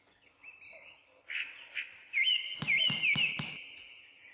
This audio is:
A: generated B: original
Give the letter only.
B